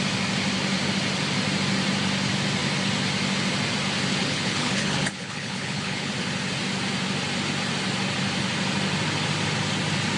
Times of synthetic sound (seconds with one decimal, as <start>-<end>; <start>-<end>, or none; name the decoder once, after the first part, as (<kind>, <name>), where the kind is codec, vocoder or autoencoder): 4.2-6.1 (codec, HILCodec)